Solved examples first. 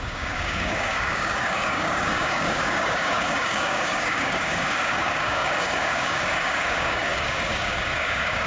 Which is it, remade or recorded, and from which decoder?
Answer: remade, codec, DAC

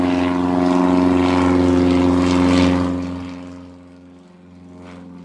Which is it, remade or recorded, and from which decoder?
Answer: recorded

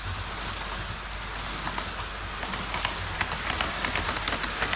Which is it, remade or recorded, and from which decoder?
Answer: recorded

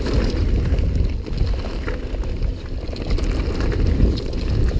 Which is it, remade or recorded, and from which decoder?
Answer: recorded